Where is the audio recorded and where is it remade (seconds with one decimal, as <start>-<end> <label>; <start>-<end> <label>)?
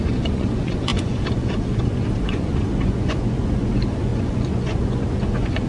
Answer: 0.0-5.7 remade